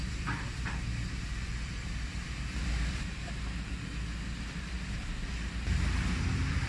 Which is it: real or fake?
fake